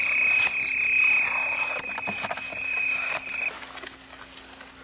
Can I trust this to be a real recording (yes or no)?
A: yes